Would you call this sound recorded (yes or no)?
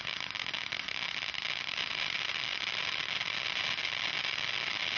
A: yes